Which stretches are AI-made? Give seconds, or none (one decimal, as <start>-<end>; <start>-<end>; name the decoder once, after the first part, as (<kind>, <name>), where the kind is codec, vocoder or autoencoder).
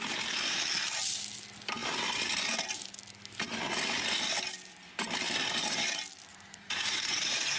6.3-7.6 (vocoder, Vocos)